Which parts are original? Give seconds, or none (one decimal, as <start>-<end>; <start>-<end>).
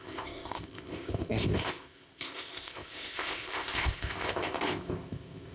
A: none